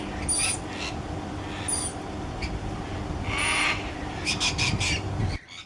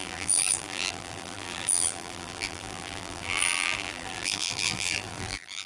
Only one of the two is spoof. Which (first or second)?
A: second